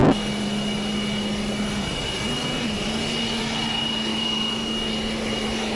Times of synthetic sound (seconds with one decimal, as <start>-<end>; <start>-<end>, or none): 4.1-4.7